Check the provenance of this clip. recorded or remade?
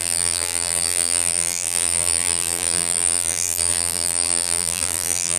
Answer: remade